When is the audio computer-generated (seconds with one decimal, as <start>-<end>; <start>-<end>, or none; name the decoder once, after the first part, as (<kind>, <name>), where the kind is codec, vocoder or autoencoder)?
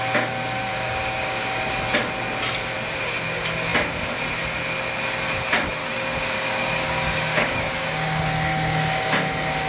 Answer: 0.7-1.7 (codec, DAC); 5.8-9.0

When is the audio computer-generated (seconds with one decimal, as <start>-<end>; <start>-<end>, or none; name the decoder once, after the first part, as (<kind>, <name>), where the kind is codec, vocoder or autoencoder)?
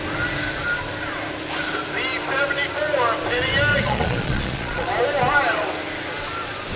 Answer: 3.7-4.9 (vocoder, Vocos)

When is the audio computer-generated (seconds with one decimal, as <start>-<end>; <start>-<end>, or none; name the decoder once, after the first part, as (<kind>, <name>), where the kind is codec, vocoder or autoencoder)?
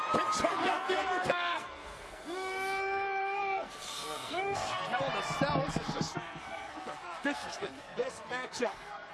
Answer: 0.5-5.0 (codec, SNAC); 5.6-9.1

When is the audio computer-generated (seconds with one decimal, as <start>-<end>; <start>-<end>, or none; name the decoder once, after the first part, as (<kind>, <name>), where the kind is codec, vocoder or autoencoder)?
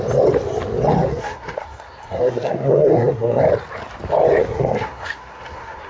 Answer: 1.1-3.4 (codec, SNAC); 4.4-5.9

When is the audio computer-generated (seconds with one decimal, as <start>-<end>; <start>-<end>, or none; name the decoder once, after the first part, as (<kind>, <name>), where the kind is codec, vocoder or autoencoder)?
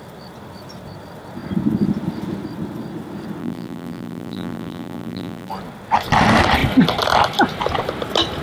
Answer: 3.4-5.5 (vocoder, BigVGAN v2)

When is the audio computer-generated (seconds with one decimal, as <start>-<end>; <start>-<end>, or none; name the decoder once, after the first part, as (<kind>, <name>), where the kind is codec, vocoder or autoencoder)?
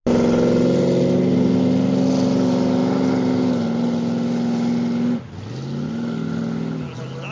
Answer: none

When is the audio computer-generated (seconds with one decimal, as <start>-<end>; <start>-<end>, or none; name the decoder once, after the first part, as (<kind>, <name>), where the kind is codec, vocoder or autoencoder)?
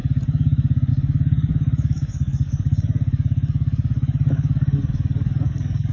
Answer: 0.0-5.9 (codec, DAC)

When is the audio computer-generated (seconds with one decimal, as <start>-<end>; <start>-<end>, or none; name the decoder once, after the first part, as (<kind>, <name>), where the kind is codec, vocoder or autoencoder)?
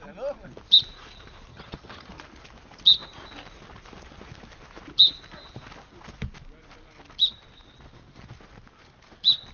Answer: 1.5-2.1 (vocoder, HiFi-GAN)